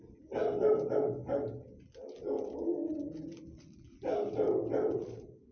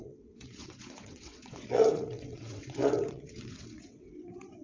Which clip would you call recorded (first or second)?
first